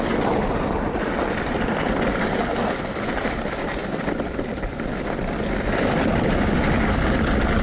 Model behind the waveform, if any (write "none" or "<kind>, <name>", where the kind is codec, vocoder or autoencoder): none